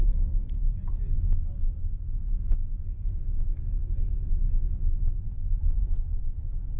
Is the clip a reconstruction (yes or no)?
no